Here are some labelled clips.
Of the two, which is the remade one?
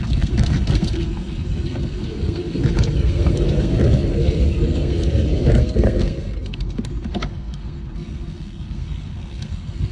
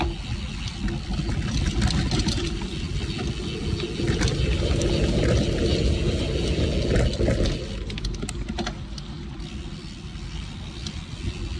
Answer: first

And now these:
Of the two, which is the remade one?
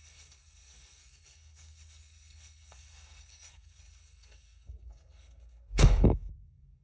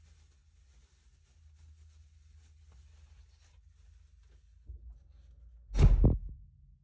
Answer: first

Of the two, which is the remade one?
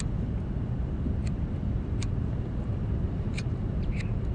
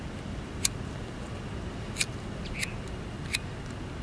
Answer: first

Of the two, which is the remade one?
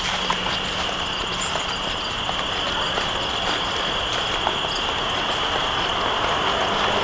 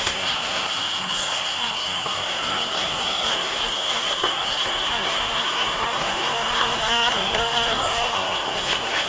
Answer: second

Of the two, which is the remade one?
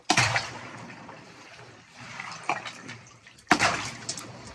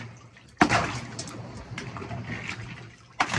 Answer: first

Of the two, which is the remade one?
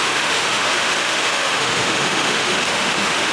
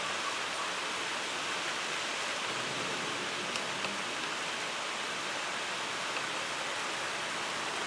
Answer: first